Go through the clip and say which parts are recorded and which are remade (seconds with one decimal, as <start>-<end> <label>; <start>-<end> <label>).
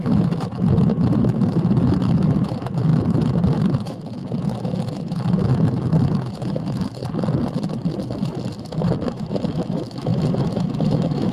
0.0-7.0 remade; 7.0-8.6 recorded; 8.6-11.3 remade